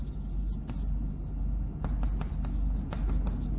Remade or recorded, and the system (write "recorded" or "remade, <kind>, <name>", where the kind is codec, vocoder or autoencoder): recorded